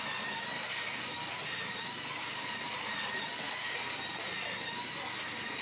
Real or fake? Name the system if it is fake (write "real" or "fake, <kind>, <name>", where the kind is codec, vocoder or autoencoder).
real